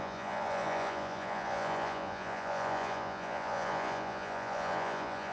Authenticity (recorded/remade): remade